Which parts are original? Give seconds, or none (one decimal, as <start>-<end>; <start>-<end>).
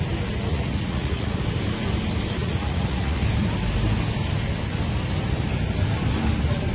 0.0-0.5; 1.4-2.4; 3.2-6.7